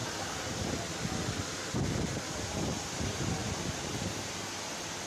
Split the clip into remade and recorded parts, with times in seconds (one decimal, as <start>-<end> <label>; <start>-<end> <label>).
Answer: 0.0-5.1 recorded

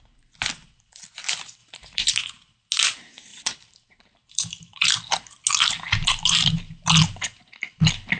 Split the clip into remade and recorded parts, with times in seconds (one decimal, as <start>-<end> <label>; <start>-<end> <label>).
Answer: 0.0-1.6 recorded; 1.6-2.1 remade; 2.1-3.3 recorded; 3.3-4.9 remade; 4.9-8.2 recorded

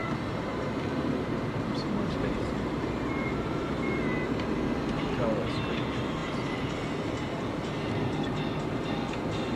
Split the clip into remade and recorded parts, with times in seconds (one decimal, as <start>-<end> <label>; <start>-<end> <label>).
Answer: 0.0-4.0 remade; 4.0-9.6 recorded